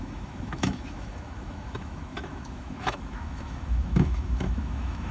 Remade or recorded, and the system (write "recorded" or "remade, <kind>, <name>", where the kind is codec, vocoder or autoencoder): remade, autoencoder, DAC-VAE